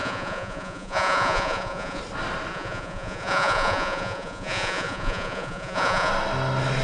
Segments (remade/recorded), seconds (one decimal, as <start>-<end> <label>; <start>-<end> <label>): 0.0-2.0 remade; 2.0-2.5 recorded; 2.5-6.1 remade; 6.1-6.8 recorded